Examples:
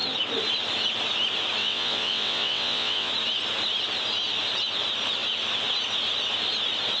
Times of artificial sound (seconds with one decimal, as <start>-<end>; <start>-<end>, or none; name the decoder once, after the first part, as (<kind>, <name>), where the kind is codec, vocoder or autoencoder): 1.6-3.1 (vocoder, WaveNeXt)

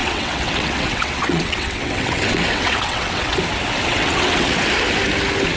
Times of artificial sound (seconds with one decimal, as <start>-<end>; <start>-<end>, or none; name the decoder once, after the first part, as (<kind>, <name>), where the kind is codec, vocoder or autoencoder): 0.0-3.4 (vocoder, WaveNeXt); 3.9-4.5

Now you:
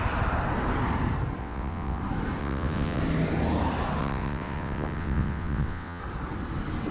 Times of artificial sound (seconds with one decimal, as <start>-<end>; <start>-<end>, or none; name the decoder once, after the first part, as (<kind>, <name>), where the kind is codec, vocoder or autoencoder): 1.4-2.0 (vocoder, WaveNeXt); 2.4-3.0; 4.0-6.0

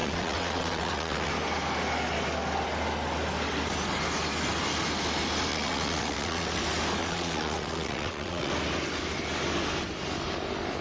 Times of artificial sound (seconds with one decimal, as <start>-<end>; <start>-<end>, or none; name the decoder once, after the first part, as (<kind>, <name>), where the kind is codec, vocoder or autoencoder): 0.0-1.3 (vocoder, WaveNeXt); 5.5-6.6; 7.0-8.5

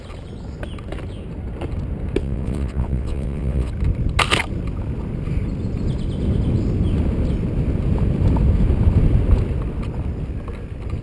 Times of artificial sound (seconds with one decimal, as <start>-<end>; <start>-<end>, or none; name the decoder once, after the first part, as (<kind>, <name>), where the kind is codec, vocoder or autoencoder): 2.2-3.7 (vocoder, WaveNeXt)

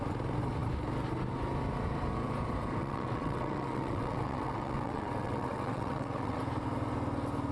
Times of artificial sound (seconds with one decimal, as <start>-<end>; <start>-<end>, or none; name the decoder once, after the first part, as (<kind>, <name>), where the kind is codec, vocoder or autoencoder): 2.8-6.4 (vocoder, WaveNeXt)